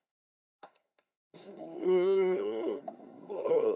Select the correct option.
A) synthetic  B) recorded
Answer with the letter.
A